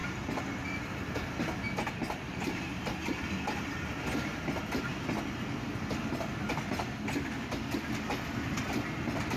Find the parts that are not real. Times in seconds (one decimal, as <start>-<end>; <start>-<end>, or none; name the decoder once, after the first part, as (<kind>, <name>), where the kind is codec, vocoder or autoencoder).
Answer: none